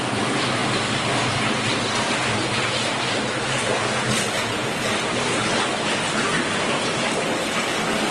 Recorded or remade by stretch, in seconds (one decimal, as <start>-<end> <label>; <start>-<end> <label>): 0.0-8.1 recorded